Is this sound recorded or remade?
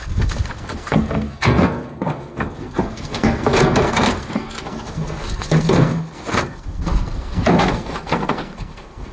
remade